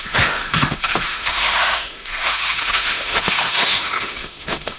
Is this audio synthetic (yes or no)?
yes